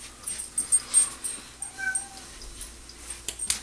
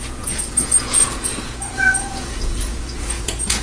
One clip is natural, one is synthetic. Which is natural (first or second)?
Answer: first